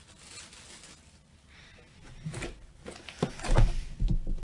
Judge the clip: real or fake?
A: real